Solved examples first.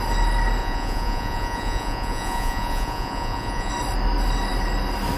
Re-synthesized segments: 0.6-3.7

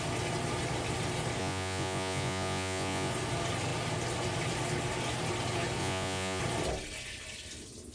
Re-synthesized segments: 1.4-3.1; 5.8-6.4

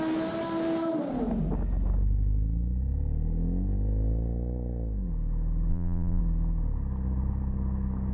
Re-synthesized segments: 5.7-6.2

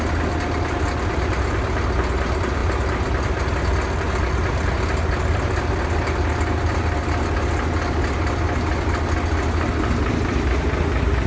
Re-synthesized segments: none